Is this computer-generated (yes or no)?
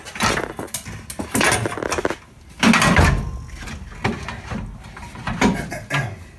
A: no